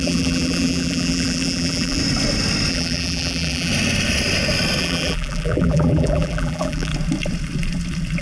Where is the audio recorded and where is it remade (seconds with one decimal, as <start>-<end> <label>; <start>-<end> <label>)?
0.0-2.0 remade; 2.0-2.7 recorded; 2.7-3.7 remade; 3.7-4.8 recorded; 4.8-6.9 remade; 6.9-8.2 recorded